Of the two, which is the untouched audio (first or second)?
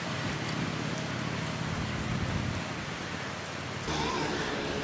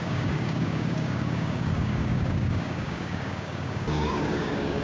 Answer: first